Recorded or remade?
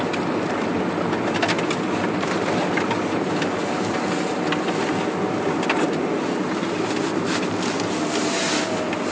recorded